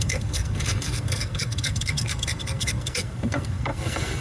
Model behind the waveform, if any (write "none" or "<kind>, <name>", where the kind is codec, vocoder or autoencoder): codec, SNAC